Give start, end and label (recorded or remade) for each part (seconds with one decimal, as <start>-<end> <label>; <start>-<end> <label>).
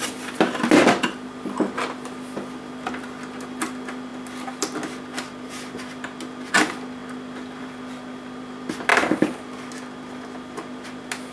0.0-11.3 recorded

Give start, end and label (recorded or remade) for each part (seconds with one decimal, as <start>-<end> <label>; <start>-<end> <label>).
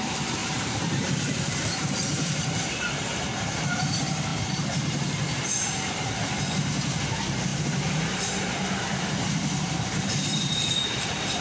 0.0-11.4 remade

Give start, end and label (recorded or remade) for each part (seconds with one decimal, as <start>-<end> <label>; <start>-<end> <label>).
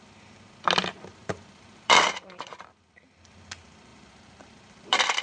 0.0-1.1 recorded; 1.1-2.5 remade; 2.5-3.9 recorded; 3.9-5.2 remade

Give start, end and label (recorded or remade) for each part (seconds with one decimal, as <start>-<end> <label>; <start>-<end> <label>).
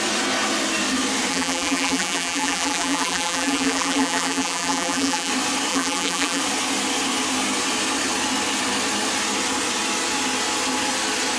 0.0-1.3 recorded; 1.3-5.3 remade; 5.3-5.7 recorded; 5.7-6.4 remade; 6.4-11.4 recorded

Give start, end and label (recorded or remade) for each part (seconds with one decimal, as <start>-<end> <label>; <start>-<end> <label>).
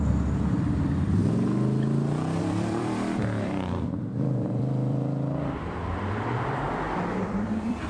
0.0-1.2 remade; 1.2-2.4 recorded; 2.4-7.9 remade